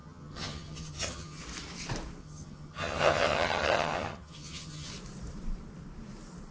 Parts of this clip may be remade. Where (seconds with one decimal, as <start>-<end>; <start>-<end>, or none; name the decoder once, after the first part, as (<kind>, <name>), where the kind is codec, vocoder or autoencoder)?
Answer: 0.0-1.4 (vocoder, HiFi-GAN); 2.2-4.9